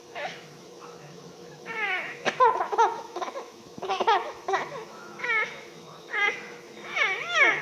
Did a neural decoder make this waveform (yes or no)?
yes